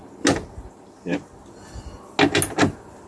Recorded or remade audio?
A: recorded